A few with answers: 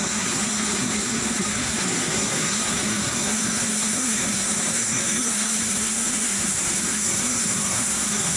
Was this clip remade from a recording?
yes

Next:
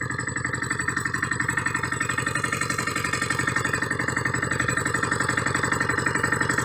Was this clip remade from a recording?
no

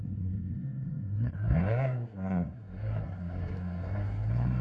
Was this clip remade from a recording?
yes